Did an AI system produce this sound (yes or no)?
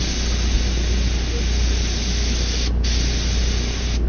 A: no